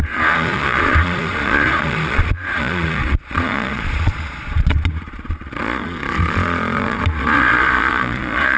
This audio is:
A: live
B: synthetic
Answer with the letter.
B